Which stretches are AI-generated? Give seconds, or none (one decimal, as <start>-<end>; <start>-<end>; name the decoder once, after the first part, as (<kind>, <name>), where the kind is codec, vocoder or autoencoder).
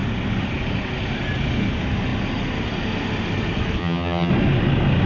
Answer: 3.8-4.3 (vocoder, HiFi-GAN)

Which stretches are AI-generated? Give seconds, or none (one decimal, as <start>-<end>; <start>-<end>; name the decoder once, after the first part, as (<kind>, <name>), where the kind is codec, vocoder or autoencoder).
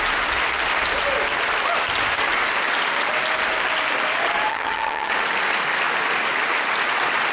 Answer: 4.5-5.1 (vocoder, HiFi-GAN)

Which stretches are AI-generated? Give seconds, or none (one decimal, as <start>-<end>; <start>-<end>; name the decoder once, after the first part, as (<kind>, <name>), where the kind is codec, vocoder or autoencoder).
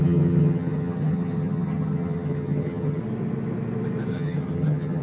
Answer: 0.0-3.0 (vocoder, HiFi-GAN); 4.1-5.0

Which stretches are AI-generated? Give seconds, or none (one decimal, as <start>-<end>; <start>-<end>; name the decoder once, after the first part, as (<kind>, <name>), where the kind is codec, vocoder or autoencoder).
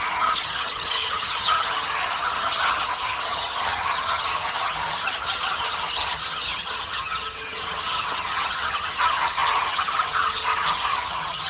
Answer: 0.0-11.5 (vocoder, HiFi-GAN)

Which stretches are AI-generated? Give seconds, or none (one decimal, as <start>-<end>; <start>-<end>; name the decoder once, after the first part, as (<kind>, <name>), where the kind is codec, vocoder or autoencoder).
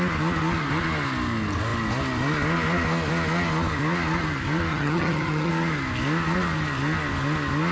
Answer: 4.7-5.5 (vocoder, HiFi-GAN)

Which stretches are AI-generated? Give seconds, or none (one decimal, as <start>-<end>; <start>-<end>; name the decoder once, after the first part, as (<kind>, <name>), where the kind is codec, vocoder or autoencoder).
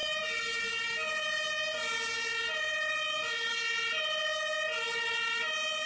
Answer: none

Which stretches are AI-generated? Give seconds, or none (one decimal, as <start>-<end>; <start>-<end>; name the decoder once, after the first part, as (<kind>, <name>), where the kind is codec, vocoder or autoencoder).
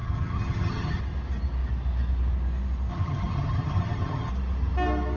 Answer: 0.0-1.0 (vocoder, HiFi-GAN); 2.9-4.3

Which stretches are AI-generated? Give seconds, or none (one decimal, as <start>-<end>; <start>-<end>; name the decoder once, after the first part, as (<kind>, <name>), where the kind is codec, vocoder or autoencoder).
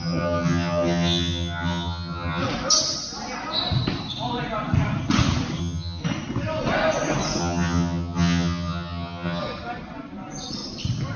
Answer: 0.0-2.4 (vocoder, HiFi-GAN); 5.6-6.0; 7.4-9.4